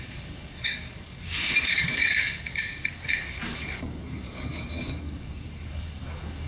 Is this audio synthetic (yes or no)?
yes